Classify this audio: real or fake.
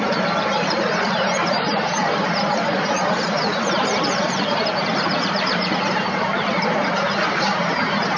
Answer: fake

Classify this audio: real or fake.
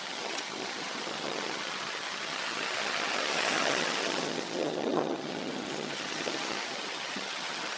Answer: fake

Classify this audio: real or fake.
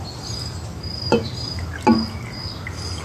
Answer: real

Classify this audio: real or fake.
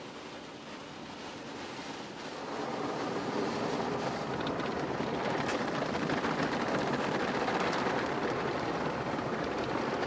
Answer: fake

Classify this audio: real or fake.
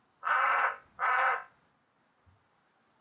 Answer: real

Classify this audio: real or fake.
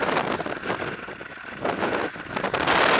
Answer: real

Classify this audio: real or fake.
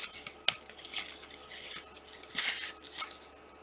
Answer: real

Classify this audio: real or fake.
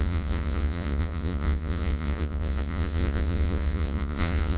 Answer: fake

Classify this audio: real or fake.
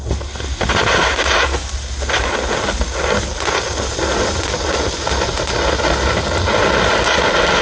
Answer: real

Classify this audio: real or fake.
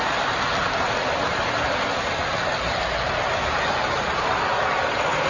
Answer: real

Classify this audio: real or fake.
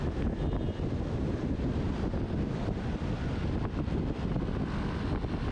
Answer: real